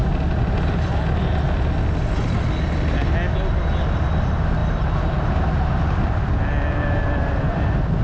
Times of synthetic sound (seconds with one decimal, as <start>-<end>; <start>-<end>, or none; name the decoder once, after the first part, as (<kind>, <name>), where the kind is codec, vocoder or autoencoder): none